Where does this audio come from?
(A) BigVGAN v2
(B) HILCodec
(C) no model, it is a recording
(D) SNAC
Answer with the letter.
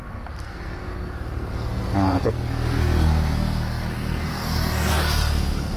D